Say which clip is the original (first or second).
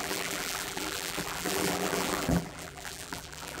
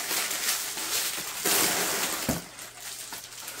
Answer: second